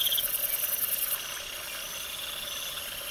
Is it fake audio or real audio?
real